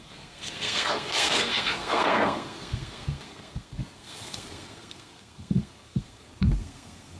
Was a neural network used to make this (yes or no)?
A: yes